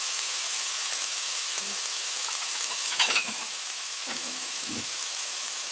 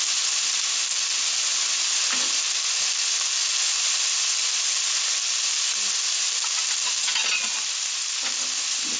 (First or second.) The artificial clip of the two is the first